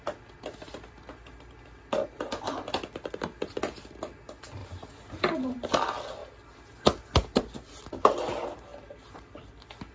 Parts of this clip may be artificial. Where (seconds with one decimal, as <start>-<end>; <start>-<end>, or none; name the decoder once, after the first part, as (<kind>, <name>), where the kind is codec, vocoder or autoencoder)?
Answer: none